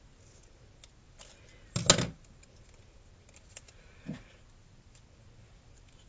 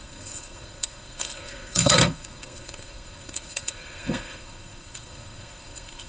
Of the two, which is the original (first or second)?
first